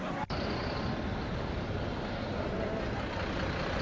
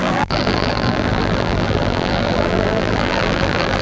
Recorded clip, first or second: first